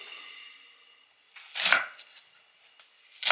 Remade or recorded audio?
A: recorded